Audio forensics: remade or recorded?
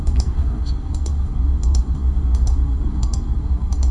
remade